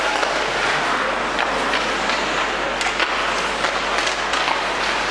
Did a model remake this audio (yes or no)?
no